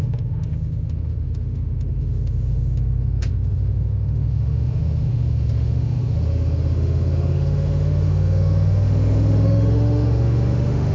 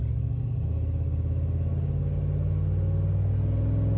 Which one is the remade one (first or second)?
first